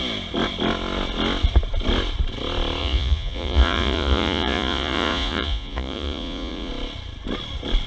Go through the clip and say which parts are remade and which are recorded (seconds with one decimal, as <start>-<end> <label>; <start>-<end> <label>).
0.0-2.8 recorded; 2.8-6.7 remade; 6.7-7.9 recorded